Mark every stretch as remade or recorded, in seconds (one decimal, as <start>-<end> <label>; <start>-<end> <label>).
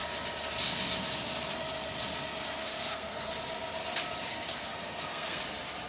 0.0-2.6 recorded; 2.6-3.3 remade; 3.3-4.3 recorded; 4.3-5.4 remade; 5.4-5.9 recorded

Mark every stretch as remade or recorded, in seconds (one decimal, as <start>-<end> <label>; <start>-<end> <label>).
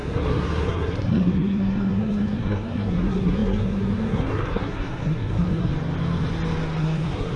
0.0-5.7 remade; 5.7-6.8 recorded; 6.8-7.4 remade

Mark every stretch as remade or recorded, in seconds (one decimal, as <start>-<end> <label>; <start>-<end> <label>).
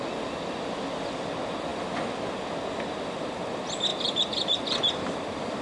0.0-5.6 recorded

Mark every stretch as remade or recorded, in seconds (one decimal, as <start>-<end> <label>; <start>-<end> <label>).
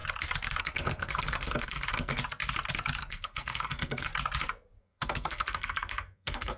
0.0-0.6 recorded; 0.6-2.2 remade; 2.2-3.0 recorded; 3.0-4.1 remade; 4.1-4.8 recorded; 4.8-6.6 remade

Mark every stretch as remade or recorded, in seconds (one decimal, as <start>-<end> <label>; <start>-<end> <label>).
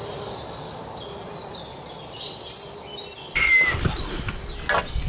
0.0-5.1 recorded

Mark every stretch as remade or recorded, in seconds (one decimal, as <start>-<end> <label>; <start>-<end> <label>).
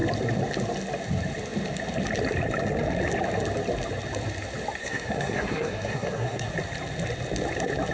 0.0-4.8 recorded; 4.8-6.5 remade; 6.5-7.9 recorded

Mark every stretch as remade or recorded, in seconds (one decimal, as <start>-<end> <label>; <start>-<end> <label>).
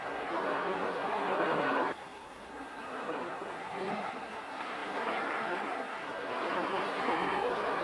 0.0-7.8 remade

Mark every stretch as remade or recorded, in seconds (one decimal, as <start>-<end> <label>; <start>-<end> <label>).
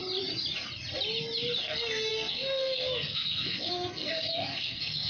0.0-1.6 recorded; 1.6-5.1 remade